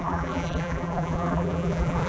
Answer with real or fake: fake